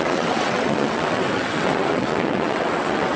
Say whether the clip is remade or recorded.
remade